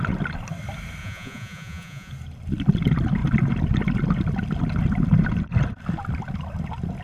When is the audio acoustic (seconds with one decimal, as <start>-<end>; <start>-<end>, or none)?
0.0-1.0; 2.1-7.0